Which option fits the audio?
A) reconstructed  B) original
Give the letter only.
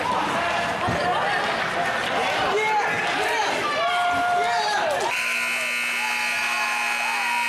B